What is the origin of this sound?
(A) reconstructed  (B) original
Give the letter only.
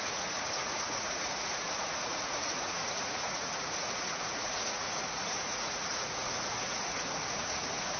A